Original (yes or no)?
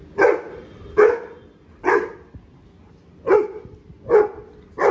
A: yes